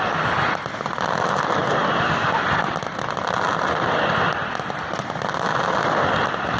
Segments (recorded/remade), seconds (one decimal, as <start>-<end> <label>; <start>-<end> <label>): 0.0-6.6 recorded